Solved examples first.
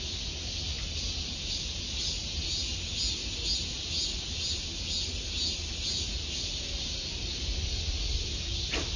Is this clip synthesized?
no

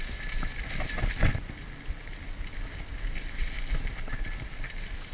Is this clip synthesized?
no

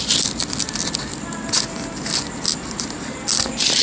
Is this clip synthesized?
no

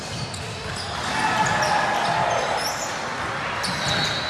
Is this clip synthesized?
no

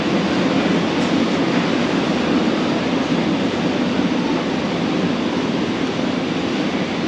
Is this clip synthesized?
no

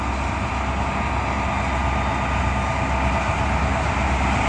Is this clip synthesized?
no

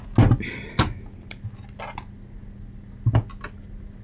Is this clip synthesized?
no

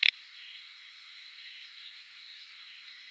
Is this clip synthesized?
yes